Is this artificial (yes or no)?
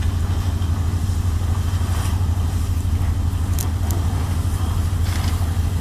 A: no